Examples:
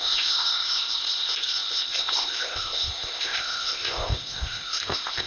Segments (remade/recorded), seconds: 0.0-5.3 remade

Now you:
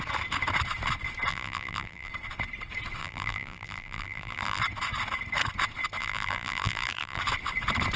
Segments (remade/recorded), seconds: 0.0-1.3 recorded; 1.3-2.1 remade; 2.1-3.0 recorded; 3.0-4.6 remade; 4.6-6.0 recorded; 6.0-7.2 remade; 7.2-8.0 recorded

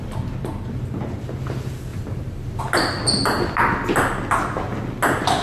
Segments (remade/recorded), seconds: 0.0-1.9 recorded; 1.9-2.6 remade; 2.6-5.4 recorded

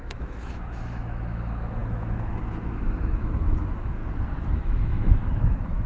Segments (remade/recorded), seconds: 0.0-4.0 remade; 4.0-4.5 recorded; 4.5-5.9 remade

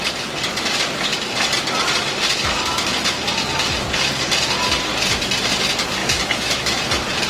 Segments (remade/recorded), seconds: 0.0-6.0 recorded; 6.0-6.8 remade; 6.8-7.3 recorded

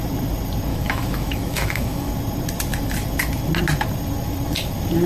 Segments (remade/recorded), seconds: 0.0-0.7 recorded; 0.7-2.1 remade; 2.1-5.1 recorded

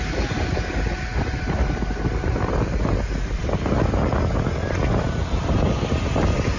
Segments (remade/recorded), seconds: 0.0-6.6 recorded

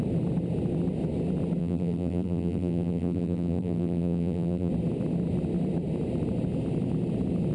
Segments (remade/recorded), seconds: 0.0-1.6 recorded; 1.6-4.7 remade; 4.7-7.5 recorded